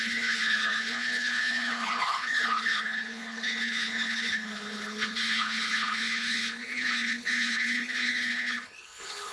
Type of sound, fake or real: fake